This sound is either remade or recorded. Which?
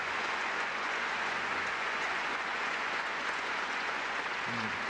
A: remade